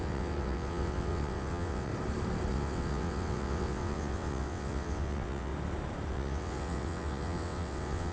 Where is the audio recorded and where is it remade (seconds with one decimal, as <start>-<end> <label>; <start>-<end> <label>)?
0.0-1.9 remade; 1.9-2.5 recorded; 2.5-5.5 remade; 5.5-6.1 recorded; 6.1-8.1 remade